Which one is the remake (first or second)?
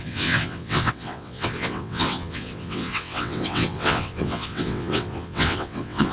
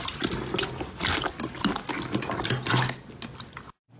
first